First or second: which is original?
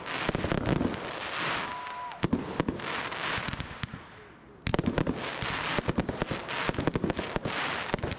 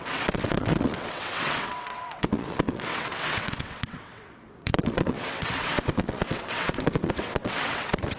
first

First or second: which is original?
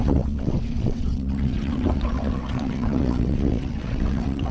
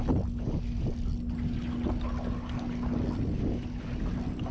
second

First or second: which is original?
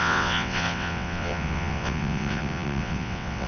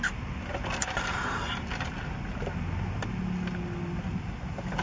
second